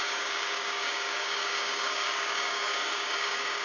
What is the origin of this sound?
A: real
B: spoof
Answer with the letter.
B